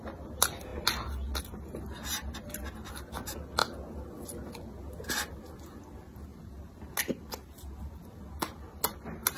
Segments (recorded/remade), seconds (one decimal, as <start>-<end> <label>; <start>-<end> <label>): 0.0-9.4 recorded